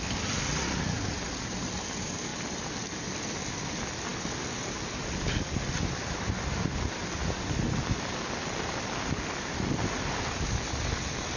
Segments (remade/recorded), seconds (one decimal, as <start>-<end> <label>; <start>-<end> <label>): 0.0-11.4 recorded

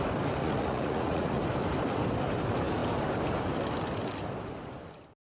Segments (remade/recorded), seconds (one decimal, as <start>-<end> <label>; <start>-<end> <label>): 0.0-0.4 recorded; 0.4-1.4 remade; 1.4-5.2 recorded

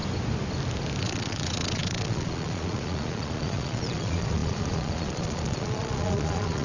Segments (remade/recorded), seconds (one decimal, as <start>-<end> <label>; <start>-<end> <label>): 0.0-1.0 recorded; 1.0-6.6 remade

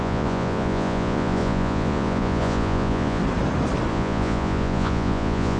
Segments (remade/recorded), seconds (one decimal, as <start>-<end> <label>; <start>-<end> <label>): 0.0-3.2 remade; 3.2-3.9 recorded; 3.9-5.6 remade

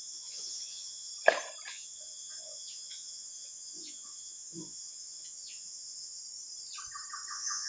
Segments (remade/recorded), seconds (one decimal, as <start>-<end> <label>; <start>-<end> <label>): 0.0-1.1 remade; 1.1-1.7 recorded; 1.7-6.2 remade; 6.2-7.3 recorded; 7.3-7.7 remade

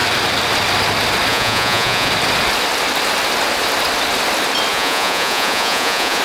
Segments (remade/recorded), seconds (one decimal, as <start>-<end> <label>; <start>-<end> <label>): 0.0-1.3 recorded; 1.3-2.1 remade; 2.1-4.7 recorded; 4.7-6.2 remade